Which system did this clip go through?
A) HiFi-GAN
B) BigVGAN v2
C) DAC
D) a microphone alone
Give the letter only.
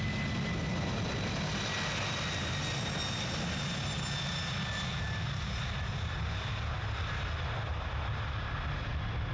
D